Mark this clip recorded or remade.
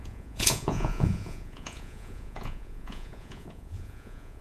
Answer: remade